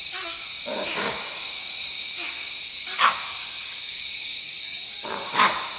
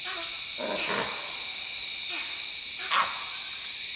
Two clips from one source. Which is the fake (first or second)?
first